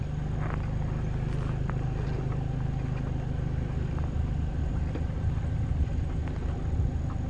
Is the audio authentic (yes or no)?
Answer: yes